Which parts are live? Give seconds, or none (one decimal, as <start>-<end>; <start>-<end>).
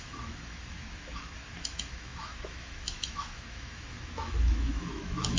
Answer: none